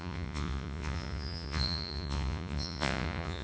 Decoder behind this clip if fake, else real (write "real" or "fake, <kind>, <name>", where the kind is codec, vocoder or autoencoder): fake, vocoder, Vocos